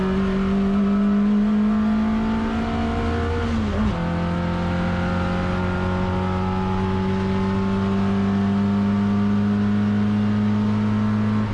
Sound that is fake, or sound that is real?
real